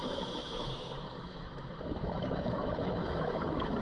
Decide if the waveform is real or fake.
fake